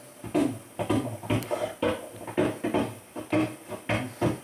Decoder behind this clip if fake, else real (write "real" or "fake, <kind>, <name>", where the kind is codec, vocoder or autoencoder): real